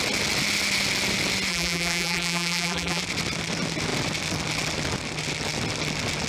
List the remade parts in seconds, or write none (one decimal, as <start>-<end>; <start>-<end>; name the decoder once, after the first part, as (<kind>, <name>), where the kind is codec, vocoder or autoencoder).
1.5-3.0 (vocoder, BigVGAN v2)